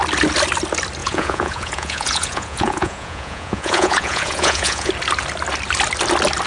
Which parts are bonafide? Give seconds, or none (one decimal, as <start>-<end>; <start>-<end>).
0.0-1.0; 4.9-6.5